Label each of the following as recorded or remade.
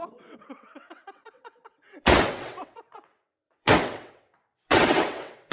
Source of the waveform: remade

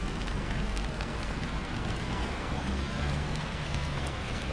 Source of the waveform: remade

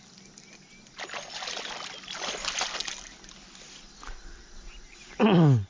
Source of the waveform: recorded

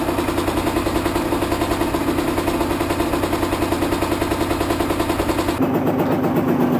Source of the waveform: recorded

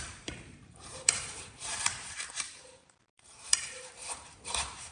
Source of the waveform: remade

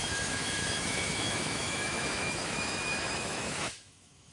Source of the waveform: remade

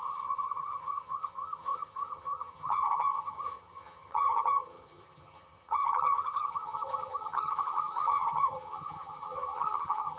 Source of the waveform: remade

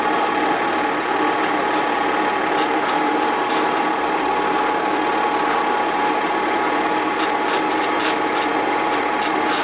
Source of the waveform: recorded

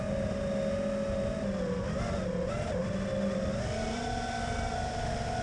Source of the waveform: recorded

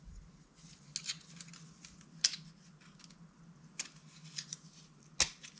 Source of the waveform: recorded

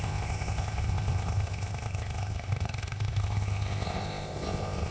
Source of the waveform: remade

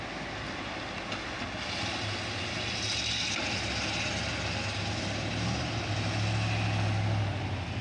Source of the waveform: recorded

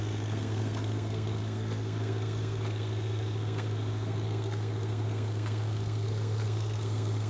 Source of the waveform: remade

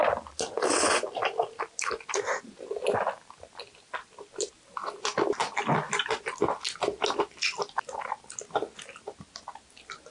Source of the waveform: recorded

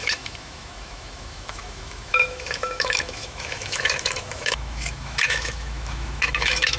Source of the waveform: remade